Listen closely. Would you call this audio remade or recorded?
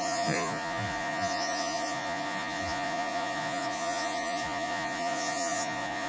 remade